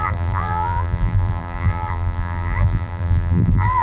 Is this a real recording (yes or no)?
no